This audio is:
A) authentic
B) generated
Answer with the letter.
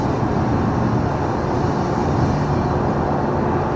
A